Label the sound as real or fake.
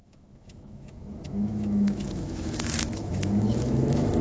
fake